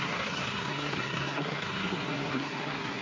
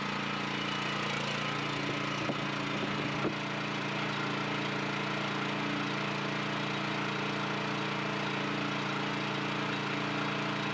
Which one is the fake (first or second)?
first